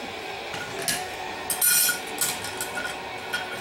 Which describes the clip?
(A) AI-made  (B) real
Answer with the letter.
B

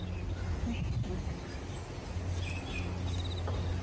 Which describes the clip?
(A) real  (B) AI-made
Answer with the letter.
A